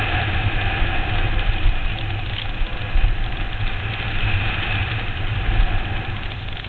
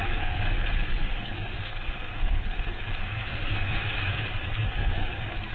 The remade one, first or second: second